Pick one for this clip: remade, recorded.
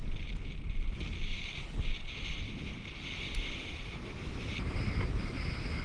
recorded